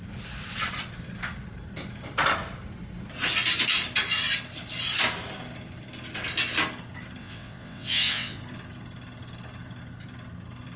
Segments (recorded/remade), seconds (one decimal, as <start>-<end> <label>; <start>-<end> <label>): 0.0-7.2 recorded; 7.2-8.4 remade; 8.4-10.8 recorded